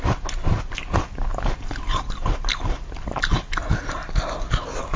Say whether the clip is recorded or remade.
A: recorded